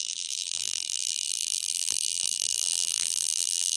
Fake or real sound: fake